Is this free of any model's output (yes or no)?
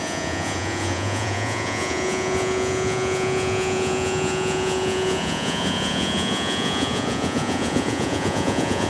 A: no